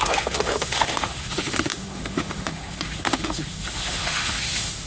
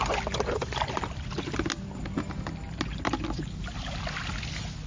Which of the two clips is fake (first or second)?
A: first